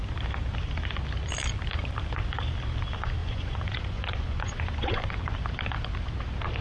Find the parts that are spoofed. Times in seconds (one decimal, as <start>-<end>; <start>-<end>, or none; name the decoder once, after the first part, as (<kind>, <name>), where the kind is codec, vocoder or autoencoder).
3.2-5.0 (vocoder, Vocos)